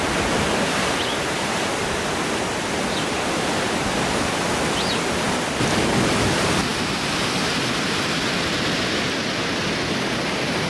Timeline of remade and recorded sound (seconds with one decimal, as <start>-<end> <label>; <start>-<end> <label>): 0.0-10.7 recorded